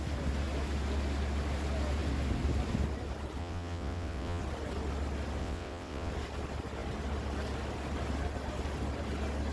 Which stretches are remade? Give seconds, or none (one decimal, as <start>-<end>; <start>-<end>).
3.4-4.4; 5.4-6.1